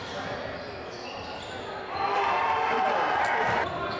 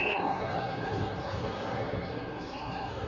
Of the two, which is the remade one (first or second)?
second